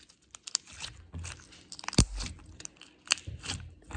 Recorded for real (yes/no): yes